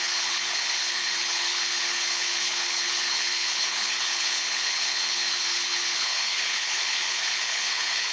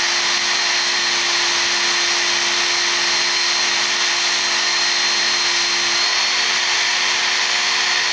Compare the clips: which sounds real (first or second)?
second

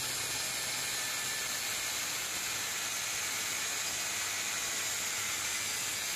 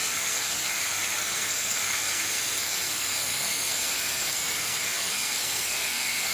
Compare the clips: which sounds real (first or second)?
first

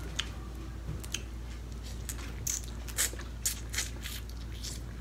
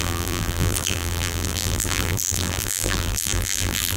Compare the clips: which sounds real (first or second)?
first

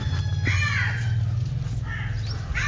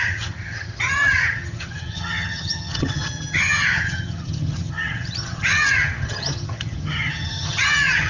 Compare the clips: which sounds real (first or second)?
first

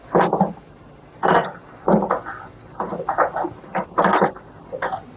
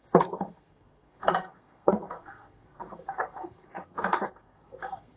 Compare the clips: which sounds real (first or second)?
first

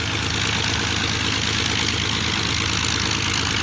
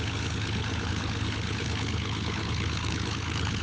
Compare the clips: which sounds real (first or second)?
first